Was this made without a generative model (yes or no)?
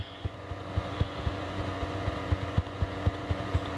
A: no